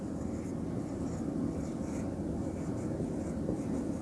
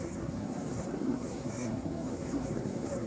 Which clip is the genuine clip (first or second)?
first